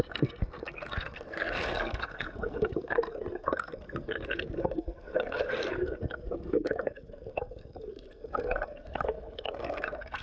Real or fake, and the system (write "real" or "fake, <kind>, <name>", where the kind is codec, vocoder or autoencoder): fake, codec, SNAC